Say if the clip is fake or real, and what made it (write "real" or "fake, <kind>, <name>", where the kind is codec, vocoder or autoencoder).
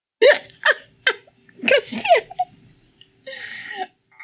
real